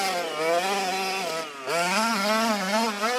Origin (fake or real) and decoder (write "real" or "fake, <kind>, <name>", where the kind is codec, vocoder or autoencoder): real